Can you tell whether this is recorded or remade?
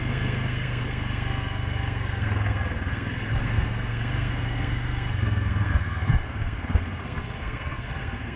remade